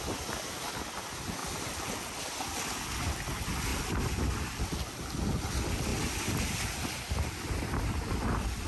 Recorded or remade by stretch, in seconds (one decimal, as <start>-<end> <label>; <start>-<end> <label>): 0.0-1.4 recorded; 1.4-2.5 remade; 2.5-3.7 recorded; 3.7-5.0 remade; 5.0-8.7 recorded